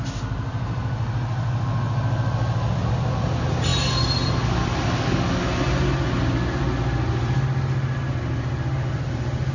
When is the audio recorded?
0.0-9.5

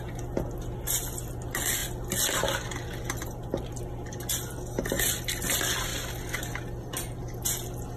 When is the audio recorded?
0.0-8.0

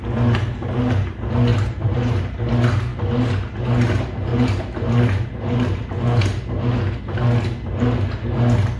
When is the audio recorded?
0.0-1.5; 2.4-4.3; 5.9-8.8

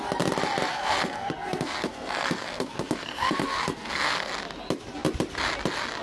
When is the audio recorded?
0.0-0.7; 4.3-6.0

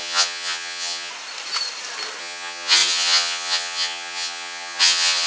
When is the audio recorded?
1.1-2.2

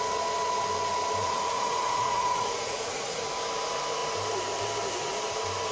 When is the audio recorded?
0.0-1.2; 3.2-5.7